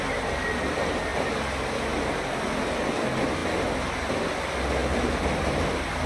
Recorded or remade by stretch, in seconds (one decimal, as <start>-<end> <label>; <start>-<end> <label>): 0.0-4.8 recorded; 4.8-6.1 remade

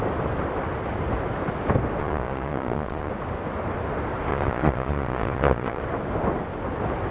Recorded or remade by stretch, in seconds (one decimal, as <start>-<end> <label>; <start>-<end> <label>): 0.0-2.0 recorded; 2.0-3.1 remade; 3.1-4.3 recorded; 4.3-5.8 remade; 5.8-7.1 recorded